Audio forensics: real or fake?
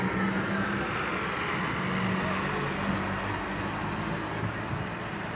real